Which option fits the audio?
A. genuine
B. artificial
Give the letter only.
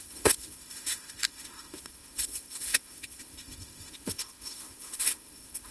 B